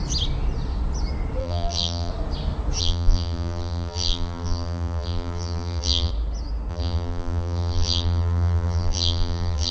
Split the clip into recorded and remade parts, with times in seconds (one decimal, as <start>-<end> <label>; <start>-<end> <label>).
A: 0.0-1.4 recorded; 1.4-2.1 remade; 2.1-2.8 recorded; 2.8-6.1 remade; 6.1-6.7 recorded; 6.7-9.7 remade